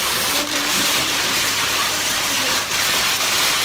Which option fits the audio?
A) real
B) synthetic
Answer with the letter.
B